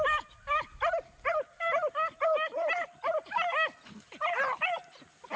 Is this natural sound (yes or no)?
yes